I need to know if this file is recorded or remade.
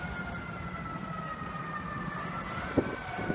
recorded